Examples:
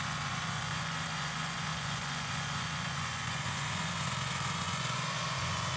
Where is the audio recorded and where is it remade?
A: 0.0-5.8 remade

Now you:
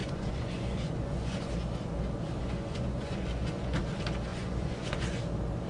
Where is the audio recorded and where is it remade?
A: 0.0-1.5 remade; 1.5-2.4 recorded; 2.4-3.8 remade; 3.8-4.3 recorded; 4.3-5.2 remade; 5.2-5.7 recorded

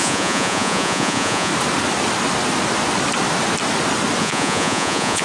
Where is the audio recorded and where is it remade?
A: 0.0-1.5 remade; 1.5-4.2 recorded; 4.2-5.2 remade

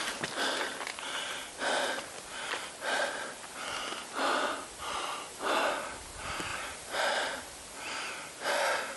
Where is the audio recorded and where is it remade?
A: 0.0-9.0 recorded

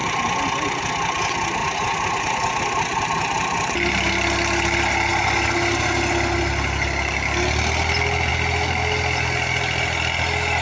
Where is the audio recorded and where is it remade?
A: 0.0-1.6 recorded; 1.6-2.6 remade; 2.6-10.6 recorded

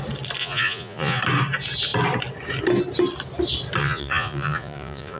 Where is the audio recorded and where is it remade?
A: 0.0-0.4 recorded; 0.4-1.2 remade; 1.2-3.8 recorded; 3.8-5.2 remade

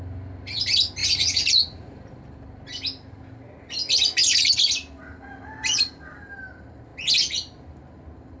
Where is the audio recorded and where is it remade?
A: 0.0-1.0 recorded; 1.0-2.2 remade; 2.2-8.4 recorded

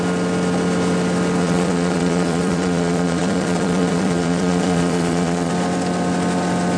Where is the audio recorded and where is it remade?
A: 0.0-1.4 recorded; 1.4-5.5 remade; 5.5-6.8 recorded